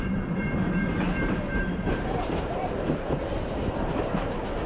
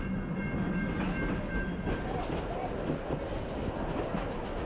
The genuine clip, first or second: second